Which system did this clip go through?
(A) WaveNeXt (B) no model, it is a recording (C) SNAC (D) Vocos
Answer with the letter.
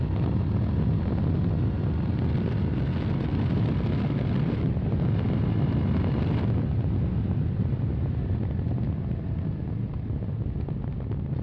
B